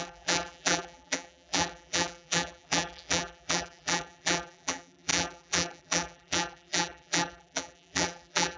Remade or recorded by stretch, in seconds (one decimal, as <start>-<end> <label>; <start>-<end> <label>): 0.0-8.6 remade

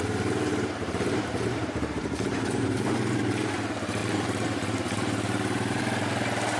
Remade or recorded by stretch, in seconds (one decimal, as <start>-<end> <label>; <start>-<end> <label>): 0.0-0.5 recorded; 0.5-3.2 remade; 3.2-4.0 recorded; 4.0-5.8 remade; 5.8-6.6 recorded

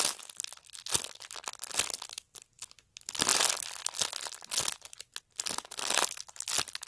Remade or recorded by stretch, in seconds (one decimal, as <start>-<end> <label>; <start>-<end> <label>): 0.0-6.9 recorded

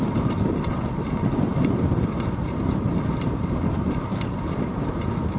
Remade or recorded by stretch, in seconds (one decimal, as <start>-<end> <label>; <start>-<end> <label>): 0.0-5.4 remade

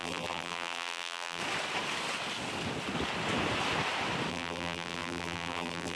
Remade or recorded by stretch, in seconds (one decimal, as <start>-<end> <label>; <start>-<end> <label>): 0.0-1.4 remade; 1.4-4.3 recorded; 4.3-6.0 remade